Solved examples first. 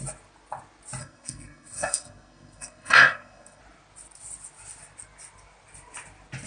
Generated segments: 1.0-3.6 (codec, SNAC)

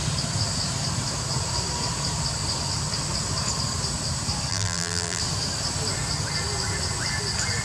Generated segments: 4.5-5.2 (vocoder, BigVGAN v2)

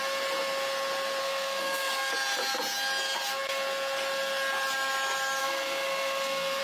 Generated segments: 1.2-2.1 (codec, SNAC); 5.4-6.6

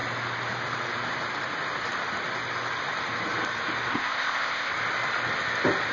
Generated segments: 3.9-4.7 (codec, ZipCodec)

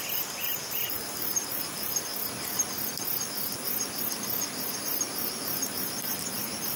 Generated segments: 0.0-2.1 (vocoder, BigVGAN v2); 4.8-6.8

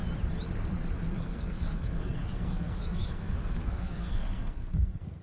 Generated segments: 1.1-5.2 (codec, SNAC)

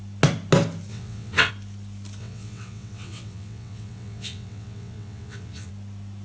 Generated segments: 0.9-1.5 (vocoder, WaveNeXt); 2.2-5.7

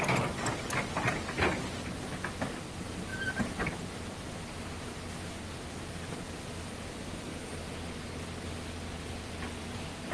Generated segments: none